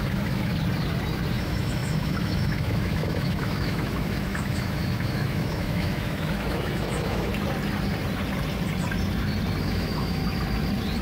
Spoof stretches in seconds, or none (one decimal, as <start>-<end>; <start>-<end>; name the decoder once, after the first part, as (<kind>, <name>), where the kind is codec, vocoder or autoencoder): 0.0-0.5 (autoencoder, DAC-VAE); 1.3-7.3; 9.6-10.2